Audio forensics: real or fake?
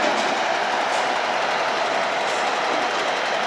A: real